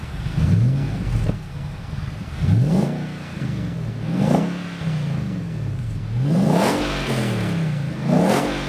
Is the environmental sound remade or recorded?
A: remade